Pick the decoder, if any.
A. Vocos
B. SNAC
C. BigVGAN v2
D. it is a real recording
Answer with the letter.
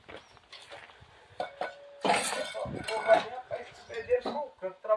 D